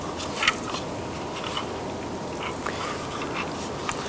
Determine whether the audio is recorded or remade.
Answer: recorded